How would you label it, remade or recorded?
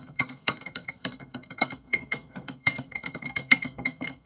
remade